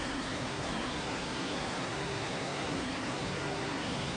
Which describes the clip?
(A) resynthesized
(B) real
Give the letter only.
A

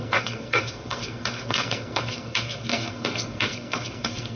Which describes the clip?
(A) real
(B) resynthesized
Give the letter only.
B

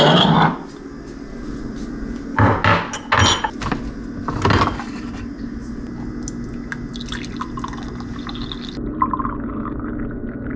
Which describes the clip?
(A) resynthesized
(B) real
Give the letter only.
B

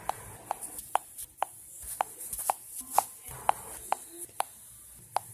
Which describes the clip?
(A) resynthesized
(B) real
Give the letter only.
B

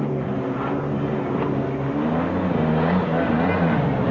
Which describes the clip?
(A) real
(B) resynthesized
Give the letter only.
A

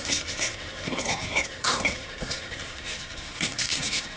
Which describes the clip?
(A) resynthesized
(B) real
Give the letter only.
A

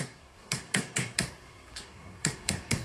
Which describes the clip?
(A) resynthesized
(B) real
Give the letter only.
A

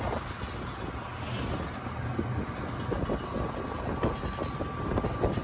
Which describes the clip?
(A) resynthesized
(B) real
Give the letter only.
B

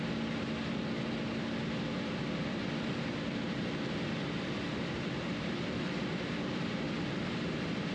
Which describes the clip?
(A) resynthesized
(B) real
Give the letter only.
B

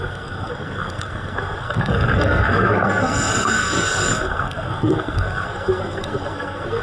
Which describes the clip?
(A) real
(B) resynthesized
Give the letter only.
B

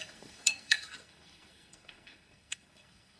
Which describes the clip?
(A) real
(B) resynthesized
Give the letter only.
B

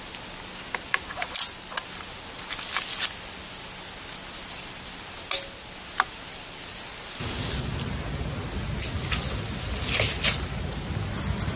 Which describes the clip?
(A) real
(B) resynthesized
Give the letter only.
A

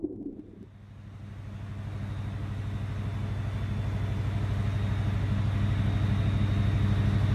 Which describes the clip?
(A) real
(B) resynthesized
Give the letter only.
A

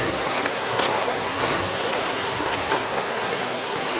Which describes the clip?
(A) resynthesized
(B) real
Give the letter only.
A